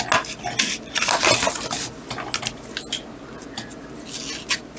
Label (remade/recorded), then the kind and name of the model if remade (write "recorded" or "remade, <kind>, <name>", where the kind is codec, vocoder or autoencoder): recorded